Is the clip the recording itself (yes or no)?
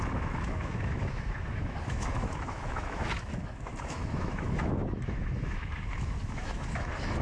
no